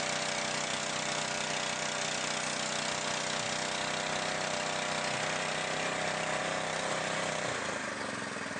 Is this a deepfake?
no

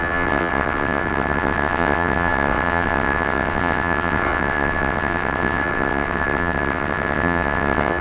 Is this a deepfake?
yes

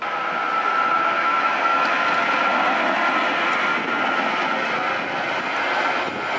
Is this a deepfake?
no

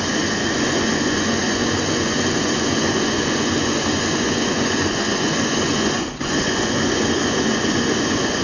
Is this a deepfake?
yes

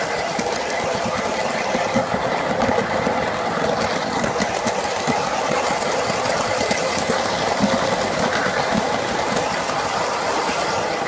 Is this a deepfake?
no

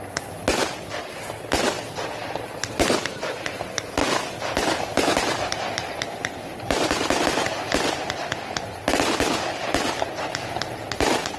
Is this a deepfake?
no